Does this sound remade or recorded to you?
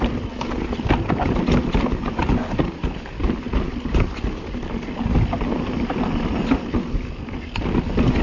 recorded